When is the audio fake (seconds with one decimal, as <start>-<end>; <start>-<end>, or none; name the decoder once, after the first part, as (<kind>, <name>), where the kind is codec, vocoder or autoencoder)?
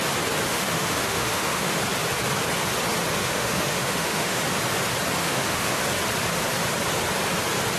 0.5-1.8 (autoencoder, DAC-VAE); 3.2-4.4; 5.2-5.8